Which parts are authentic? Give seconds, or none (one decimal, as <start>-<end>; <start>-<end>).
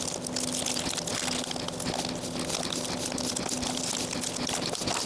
0.0-5.1